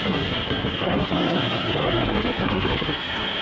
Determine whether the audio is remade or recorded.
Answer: remade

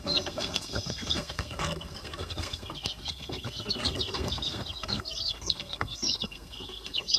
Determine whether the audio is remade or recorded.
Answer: remade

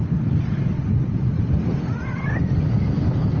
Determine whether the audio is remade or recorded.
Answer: recorded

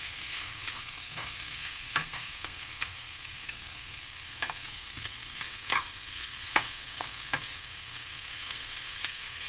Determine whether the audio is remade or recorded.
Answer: remade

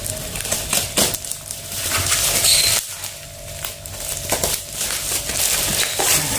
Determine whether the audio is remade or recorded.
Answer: recorded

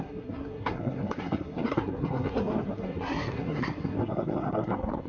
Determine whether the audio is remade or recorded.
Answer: remade